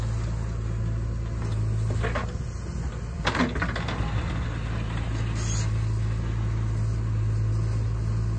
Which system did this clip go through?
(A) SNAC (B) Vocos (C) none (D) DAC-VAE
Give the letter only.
C